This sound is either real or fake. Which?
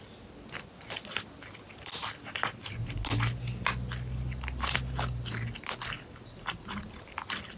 real